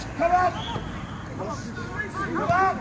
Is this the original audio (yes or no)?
no